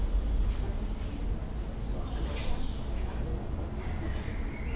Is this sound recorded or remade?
recorded